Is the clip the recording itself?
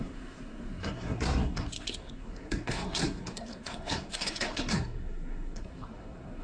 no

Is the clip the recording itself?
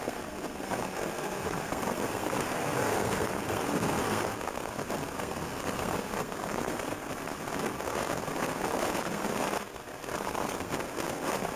no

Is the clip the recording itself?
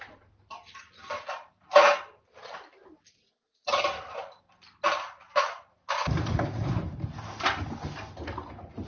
yes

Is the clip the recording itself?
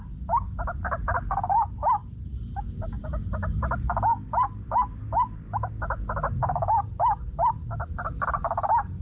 yes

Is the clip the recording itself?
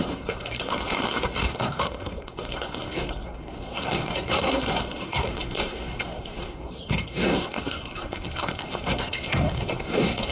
no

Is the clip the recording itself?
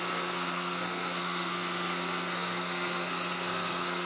no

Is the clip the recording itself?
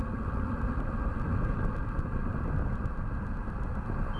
yes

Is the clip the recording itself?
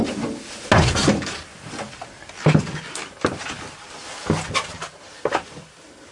yes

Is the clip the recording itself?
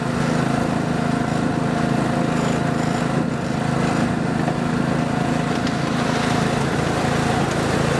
yes